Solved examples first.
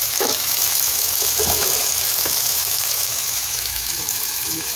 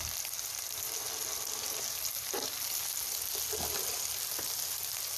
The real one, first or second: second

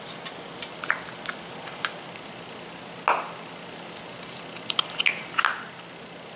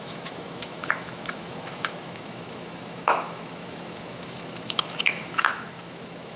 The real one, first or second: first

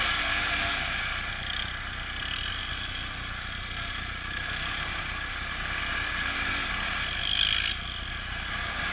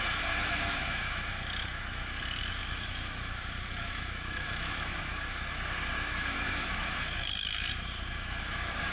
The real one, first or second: first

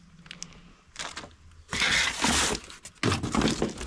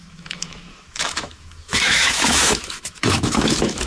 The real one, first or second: first